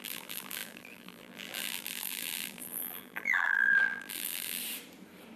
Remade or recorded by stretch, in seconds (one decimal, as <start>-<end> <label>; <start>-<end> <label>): 0.0-4.6 remade; 4.6-5.4 recorded